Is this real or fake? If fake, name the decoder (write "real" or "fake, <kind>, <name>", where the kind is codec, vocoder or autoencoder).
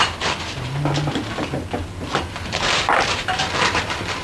fake, vocoder, BigVGAN v2